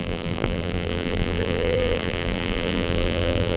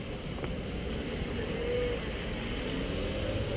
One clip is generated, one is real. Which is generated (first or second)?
first